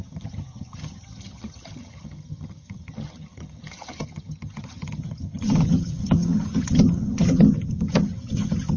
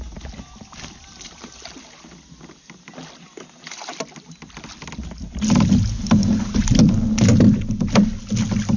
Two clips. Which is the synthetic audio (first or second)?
first